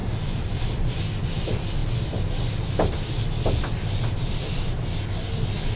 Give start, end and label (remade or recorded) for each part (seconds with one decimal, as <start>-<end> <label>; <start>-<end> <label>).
0.0-0.9 remade; 0.9-1.8 recorded; 1.8-2.7 remade; 2.7-5.8 recorded